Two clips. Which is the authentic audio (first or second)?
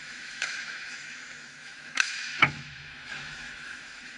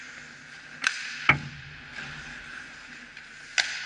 second